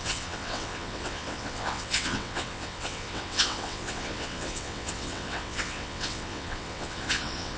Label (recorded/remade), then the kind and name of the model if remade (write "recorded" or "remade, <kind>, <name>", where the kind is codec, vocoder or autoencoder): remade, vocoder, WaveNeXt